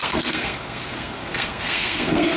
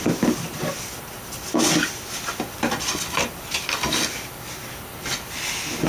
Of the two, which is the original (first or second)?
second